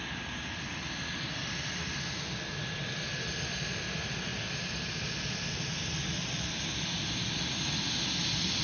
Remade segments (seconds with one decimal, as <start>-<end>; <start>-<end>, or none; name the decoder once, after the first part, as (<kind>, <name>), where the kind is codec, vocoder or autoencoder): 1.4-2.2 (vocoder, BigVGAN v2); 4.3-5.0